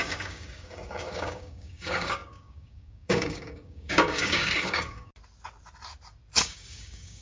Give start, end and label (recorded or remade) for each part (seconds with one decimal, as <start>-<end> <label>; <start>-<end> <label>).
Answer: 0.0-5.1 remade; 5.1-6.4 recorded; 6.4-7.2 remade